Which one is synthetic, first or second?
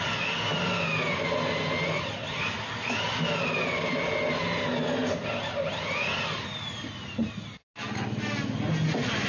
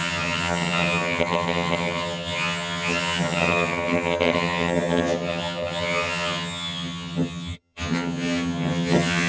second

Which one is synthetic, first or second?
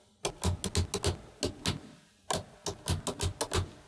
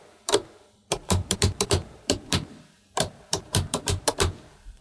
second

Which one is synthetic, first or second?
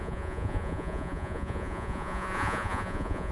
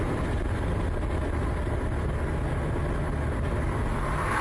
first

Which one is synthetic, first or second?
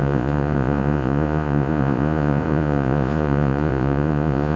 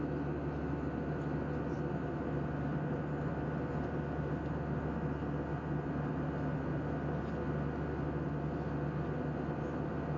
first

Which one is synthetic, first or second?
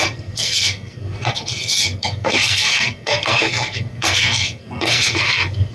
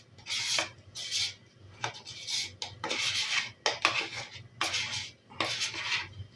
first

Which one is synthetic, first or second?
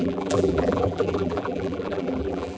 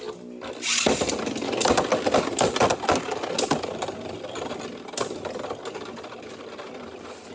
first